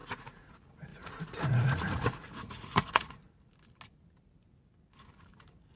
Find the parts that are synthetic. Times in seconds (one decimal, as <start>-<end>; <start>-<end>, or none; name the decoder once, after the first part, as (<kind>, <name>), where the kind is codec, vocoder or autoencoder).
0.0-0.5 (vocoder, Vocos); 0.9-3.2